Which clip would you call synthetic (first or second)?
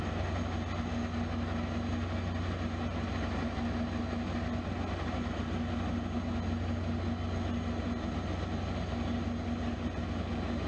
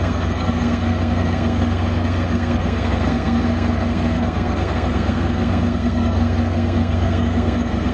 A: second